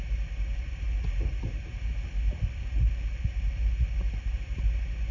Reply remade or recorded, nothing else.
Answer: recorded